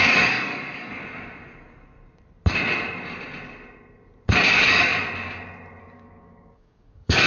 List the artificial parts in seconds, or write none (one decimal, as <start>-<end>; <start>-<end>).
0.0-1.0; 4.5-4.9; 5.8-7.3